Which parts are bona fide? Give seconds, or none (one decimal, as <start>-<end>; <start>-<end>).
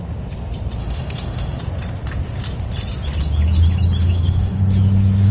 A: 0.0-0.8; 1.6-4.0; 4.6-5.3